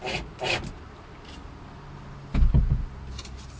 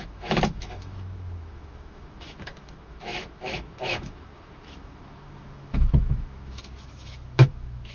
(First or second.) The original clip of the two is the first